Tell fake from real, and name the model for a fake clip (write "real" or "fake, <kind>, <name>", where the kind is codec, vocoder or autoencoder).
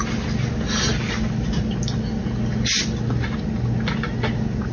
real